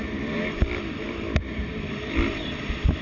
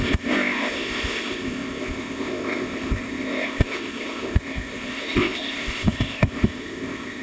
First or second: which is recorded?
first